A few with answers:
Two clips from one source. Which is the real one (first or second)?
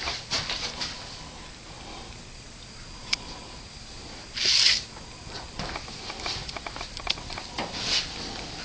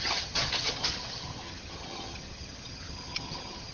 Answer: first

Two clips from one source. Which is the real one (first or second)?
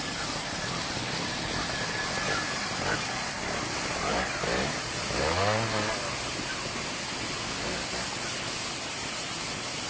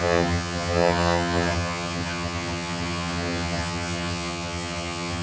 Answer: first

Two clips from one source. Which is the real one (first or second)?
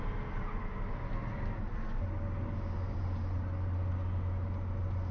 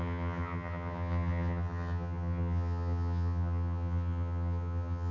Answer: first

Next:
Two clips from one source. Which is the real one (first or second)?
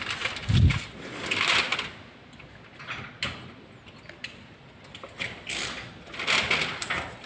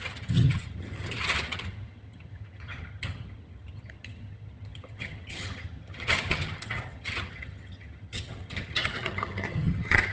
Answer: first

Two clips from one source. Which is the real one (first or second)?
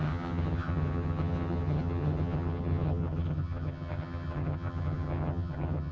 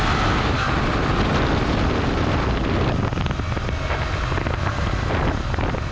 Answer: second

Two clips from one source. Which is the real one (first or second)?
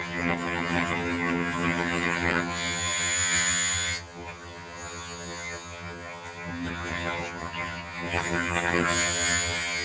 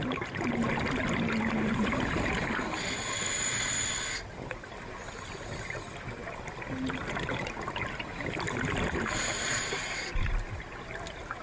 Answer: second